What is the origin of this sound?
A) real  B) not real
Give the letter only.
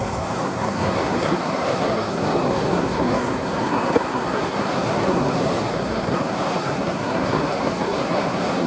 B